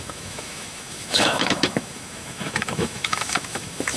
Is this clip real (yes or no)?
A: no